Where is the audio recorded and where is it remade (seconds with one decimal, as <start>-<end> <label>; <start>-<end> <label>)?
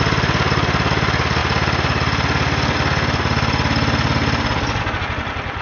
0.0-5.6 recorded